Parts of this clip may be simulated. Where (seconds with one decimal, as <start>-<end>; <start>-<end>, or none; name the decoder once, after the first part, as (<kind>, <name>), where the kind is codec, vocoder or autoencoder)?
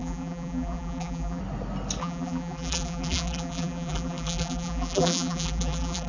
0.0-1.4 (vocoder, BigVGAN v2); 2.0-6.1